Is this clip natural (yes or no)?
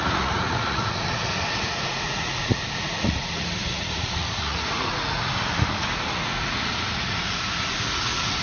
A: no